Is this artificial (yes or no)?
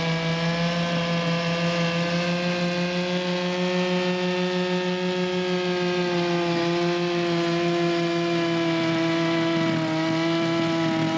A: no